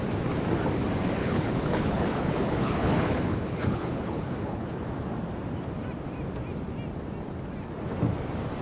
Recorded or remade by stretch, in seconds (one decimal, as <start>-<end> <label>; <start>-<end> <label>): 0.0-1.2 recorded; 1.2-4.8 remade; 4.8-8.6 recorded